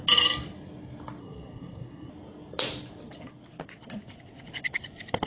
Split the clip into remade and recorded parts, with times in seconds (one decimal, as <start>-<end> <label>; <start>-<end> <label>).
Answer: 0.0-1.2 recorded; 1.2-2.1 remade; 2.1-5.3 recorded